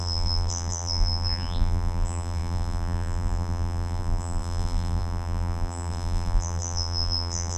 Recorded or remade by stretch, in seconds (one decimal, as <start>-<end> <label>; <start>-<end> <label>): 0.0-7.6 remade